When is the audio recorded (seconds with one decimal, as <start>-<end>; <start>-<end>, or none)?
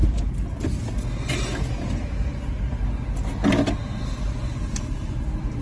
0.0-5.6